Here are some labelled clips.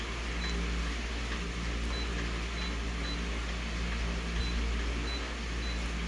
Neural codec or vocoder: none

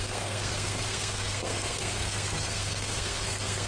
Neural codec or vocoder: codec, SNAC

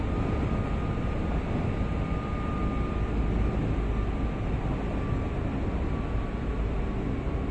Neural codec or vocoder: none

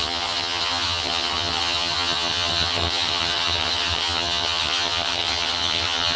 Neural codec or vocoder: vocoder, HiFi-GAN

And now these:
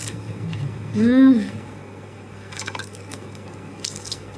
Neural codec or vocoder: codec, SNAC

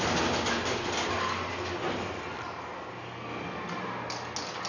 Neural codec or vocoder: none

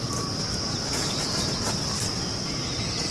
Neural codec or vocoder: none